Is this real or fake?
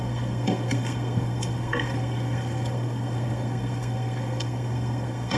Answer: fake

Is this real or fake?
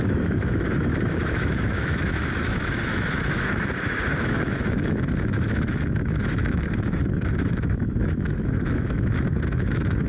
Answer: fake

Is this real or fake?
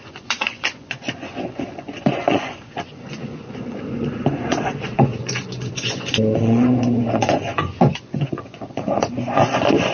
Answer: fake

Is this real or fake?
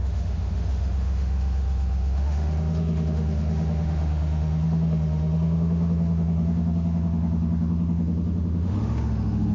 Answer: fake